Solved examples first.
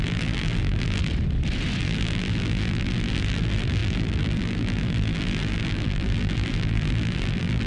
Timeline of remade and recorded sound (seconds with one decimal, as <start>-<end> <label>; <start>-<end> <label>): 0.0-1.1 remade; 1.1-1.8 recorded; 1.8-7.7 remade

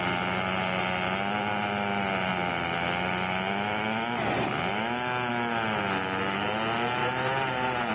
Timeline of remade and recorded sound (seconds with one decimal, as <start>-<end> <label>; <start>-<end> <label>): 0.0-7.0 recorded; 7.0-7.9 remade

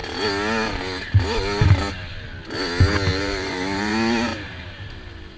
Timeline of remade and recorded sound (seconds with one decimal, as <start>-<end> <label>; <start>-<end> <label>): 0.0-3.1 recorded; 3.1-3.9 remade; 3.9-4.3 recorded; 4.3-4.9 remade; 4.9-5.4 recorded